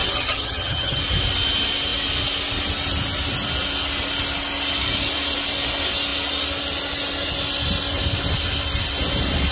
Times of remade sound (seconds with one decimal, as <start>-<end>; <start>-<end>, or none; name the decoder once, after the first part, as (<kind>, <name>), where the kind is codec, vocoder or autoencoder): 0.0-1.0 (vocoder, HiFi-GAN)